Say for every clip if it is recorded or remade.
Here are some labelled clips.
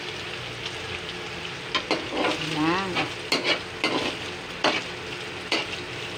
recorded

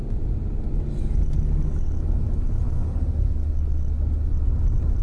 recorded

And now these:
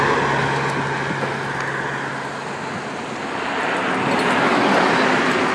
recorded